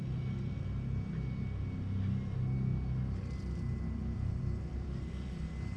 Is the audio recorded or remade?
recorded